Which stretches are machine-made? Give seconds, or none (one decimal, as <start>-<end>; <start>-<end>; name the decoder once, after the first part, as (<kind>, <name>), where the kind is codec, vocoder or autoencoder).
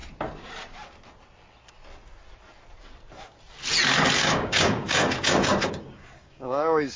4.2-7.0 (codec, DAC)